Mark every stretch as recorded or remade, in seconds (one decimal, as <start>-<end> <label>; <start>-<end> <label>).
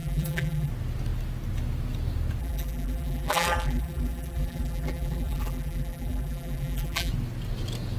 0.0-0.7 remade; 0.7-2.4 recorded; 2.4-7.1 remade; 7.1-8.0 recorded